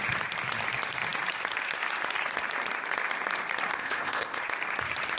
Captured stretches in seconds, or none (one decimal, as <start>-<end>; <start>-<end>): 0.0-3.7; 4.4-5.2